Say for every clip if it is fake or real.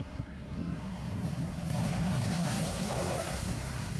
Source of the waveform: fake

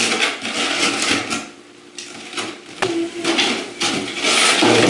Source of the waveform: real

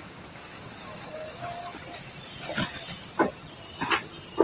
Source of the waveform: real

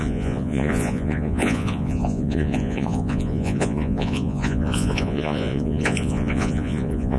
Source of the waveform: fake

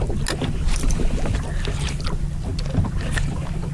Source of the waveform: real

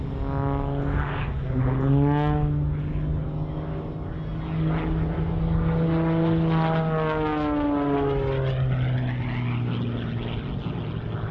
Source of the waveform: real